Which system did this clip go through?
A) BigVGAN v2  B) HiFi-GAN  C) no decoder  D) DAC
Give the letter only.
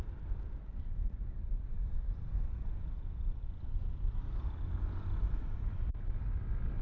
C